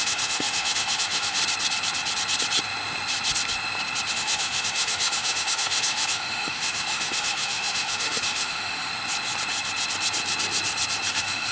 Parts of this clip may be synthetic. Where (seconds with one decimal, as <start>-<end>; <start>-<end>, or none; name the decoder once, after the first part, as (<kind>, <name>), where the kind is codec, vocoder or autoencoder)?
0.0-1.4 (autoencoder, DAC-VAE); 4.1-8.9; 11.1-11.5